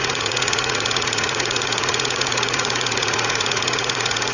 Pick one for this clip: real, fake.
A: fake